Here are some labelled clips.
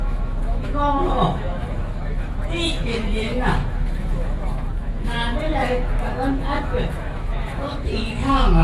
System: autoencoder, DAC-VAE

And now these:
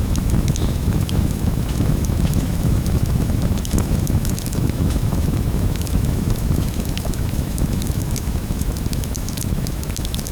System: autoencoder, DAC-VAE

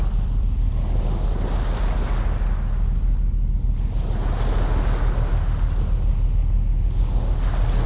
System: none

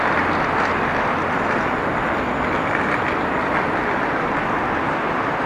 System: none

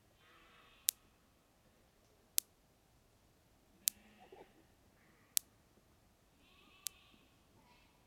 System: none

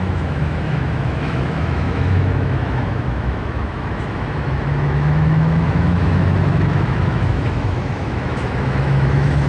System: autoencoder, DAC-VAE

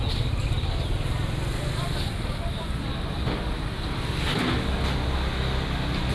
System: none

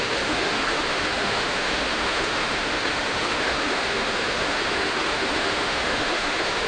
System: autoencoder, DAC-VAE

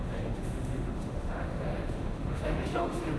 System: autoencoder, DAC-VAE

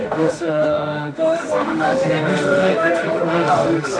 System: autoencoder, DAC-VAE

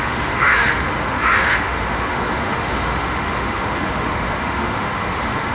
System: autoencoder, DAC-VAE